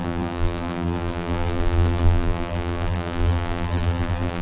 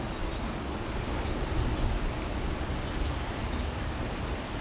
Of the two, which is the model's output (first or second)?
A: first